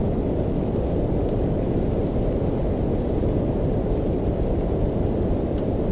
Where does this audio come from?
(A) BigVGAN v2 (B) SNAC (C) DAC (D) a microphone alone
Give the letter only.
D